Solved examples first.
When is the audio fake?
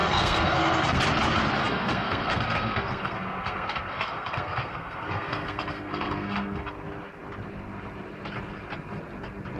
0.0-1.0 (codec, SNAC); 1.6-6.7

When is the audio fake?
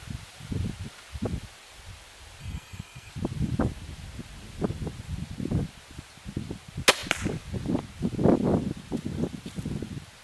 2.4-3.1 (codec, SNAC)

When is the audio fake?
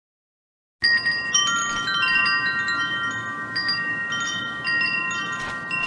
none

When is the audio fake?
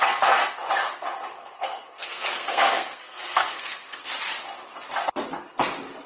1.3-4.1 (codec, SNAC)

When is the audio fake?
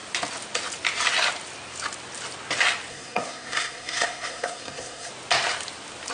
2.9-5.1 (codec, SNAC)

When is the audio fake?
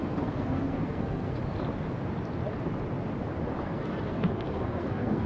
0.0-1.4 (codec, SNAC); 3.6-5.3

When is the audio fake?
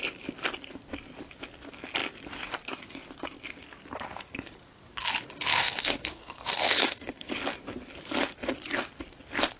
5.5-7.3 (codec, SNAC)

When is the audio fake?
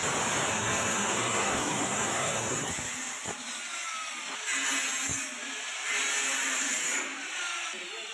0.5-2.7 (codec, SNAC)